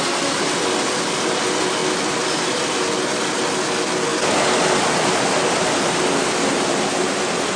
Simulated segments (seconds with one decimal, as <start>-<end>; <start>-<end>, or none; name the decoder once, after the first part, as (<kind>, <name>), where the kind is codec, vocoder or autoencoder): none